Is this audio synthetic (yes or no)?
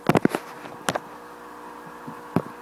no